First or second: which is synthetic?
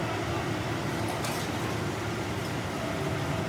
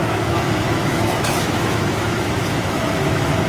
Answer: second